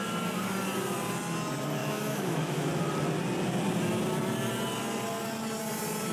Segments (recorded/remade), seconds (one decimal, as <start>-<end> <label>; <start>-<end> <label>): 0.0-1.8 recorded; 1.8-2.7 remade; 2.7-6.1 recorded